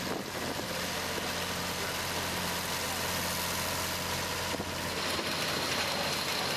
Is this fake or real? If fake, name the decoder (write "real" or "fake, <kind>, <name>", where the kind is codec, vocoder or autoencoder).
real